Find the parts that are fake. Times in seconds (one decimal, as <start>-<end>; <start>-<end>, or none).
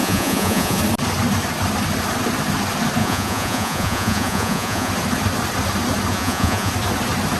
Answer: 0.0-0.8; 3.0-4.9; 6.1-6.7